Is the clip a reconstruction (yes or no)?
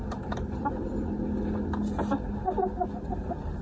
no